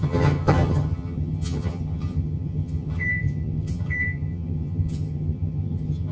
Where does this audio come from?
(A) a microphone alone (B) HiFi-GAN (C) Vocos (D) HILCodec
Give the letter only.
B